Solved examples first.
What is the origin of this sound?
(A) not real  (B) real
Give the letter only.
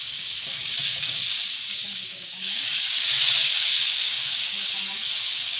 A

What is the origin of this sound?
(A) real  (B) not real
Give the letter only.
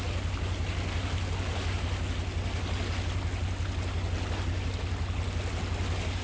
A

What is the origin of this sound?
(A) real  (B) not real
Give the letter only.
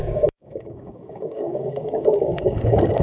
B